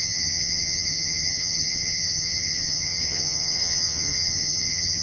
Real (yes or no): no